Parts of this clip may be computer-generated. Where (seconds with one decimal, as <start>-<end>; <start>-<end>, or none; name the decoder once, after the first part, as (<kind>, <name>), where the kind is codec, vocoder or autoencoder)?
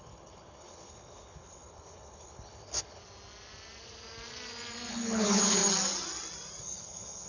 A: 0.0-3.0 (codec, HILCodec); 4.9-5.6; 6.6-7.3